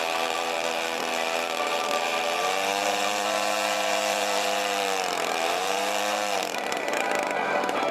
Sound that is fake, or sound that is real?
fake